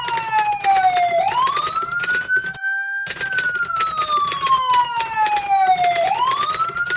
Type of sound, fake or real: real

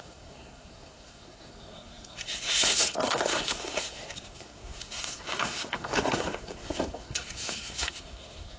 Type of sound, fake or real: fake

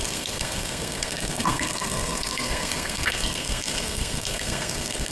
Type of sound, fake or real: fake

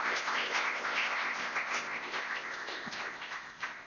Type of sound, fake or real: fake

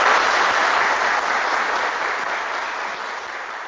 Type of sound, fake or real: real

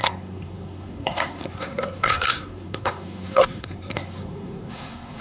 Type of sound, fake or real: fake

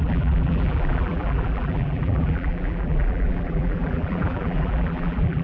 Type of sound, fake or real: fake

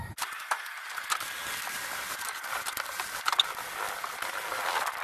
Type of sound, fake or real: real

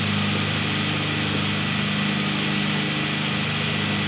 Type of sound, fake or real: real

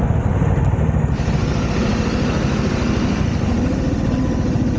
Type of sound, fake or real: real